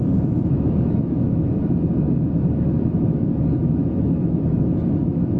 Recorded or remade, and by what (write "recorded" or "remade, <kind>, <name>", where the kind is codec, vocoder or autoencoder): remade, autoencoder, DAC-VAE